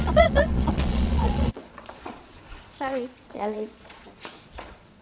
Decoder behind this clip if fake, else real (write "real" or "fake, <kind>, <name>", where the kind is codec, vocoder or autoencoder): fake, vocoder, Vocos